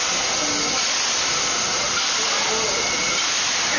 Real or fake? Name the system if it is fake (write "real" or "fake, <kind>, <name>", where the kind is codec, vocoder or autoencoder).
real